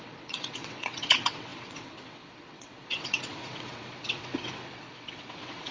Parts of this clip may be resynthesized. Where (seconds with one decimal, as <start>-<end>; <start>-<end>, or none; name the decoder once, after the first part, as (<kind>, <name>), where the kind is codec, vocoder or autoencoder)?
0.0-5.7 (vocoder, WaveNeXt)